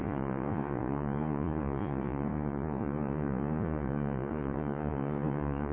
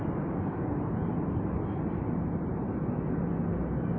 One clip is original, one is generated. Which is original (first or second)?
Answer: second